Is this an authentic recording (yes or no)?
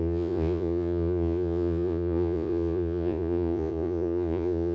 no